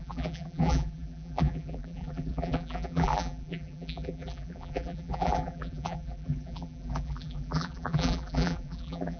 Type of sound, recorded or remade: remade